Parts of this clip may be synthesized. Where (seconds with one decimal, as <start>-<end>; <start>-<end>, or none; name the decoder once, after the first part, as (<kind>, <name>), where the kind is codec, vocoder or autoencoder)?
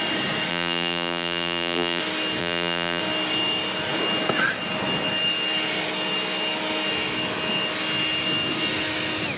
0.5-2.0 (vocoder, BigVGAN v2); 2.4-3.0